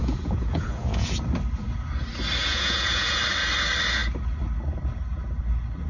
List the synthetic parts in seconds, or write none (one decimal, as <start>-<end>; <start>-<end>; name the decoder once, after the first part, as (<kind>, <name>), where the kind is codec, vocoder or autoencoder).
0.0-1.2 (vocoder, Vocos); 2.4-3.2